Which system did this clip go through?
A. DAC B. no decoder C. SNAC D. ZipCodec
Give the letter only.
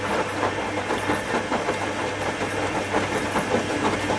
B